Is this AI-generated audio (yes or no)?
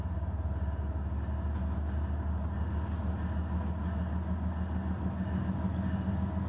no